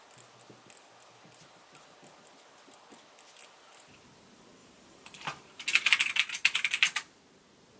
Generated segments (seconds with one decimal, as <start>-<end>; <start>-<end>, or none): 4.6-5.4